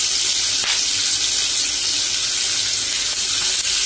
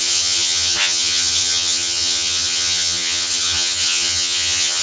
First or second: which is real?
first